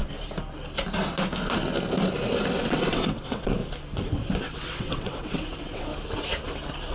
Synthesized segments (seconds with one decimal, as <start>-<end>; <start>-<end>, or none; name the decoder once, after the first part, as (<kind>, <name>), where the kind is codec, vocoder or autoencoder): 2.6-3.6 (vocoder, WaveNeXt); 4.4-5.9